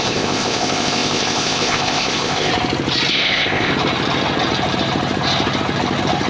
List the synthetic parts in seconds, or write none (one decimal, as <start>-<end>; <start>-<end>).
0.0-2.5; 3.1-3.7